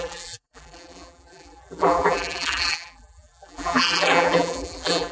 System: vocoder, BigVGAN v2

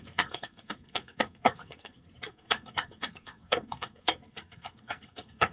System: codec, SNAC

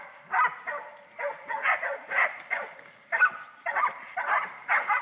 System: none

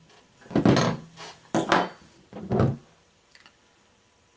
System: none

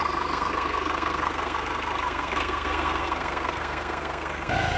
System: codec, SNAC